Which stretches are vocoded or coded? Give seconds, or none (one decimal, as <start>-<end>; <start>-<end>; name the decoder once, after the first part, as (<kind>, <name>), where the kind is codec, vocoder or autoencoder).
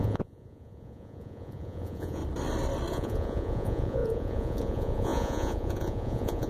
0.0-2.2 (vocoder, Vocos); 2.9-6.5